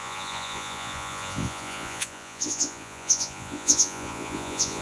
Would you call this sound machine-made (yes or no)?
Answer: yes